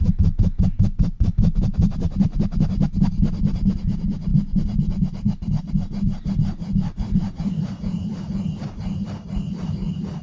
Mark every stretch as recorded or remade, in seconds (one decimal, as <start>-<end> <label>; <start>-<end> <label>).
0.0-10.2 recorded